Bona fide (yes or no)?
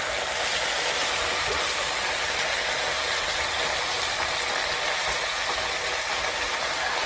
yes